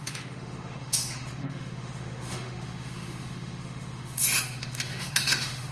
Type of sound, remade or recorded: remade